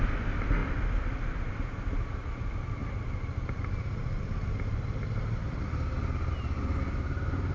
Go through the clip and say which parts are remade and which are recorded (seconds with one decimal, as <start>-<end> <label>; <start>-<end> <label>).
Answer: 0.0-7.5 recorded